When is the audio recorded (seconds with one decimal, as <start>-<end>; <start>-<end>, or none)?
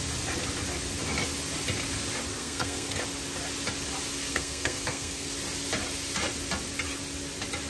0.0-2.4; 3.0-4.3; 5.3-7.7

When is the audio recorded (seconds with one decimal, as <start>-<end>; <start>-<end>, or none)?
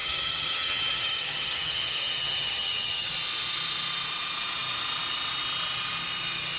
3.1-6.6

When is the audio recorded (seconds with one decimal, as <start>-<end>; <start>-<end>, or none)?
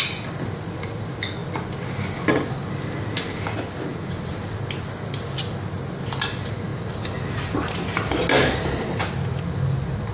0.0-10.1